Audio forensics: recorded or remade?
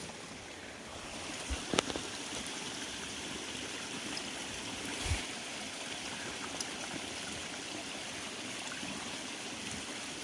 remade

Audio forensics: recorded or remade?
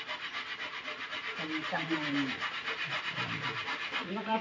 remade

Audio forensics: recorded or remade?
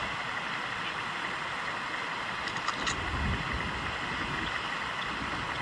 recorded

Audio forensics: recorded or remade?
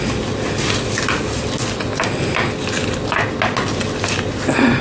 recorded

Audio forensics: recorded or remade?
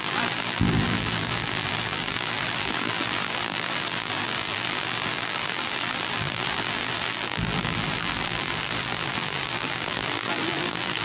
remade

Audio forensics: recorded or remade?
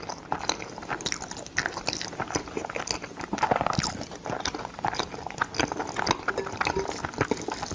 recorded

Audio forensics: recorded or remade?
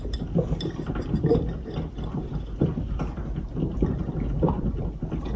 recorded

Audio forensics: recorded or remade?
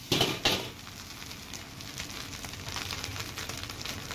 recorded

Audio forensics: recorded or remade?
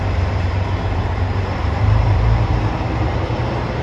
remade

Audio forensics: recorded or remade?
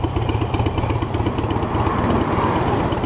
recorded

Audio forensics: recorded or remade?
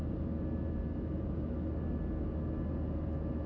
recorded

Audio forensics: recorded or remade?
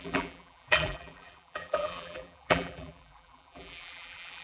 remade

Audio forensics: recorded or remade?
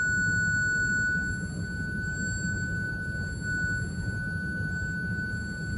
recorded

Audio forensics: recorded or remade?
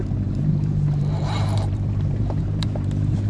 remade